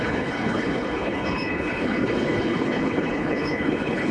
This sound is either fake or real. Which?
fake